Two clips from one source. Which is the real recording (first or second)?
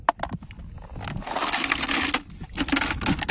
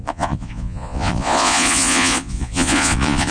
first